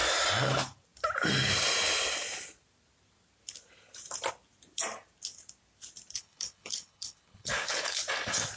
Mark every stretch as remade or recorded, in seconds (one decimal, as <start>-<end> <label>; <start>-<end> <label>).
0.0-6.2 recorded; 6.2-8.0 remade; 8.0-8.6 recorded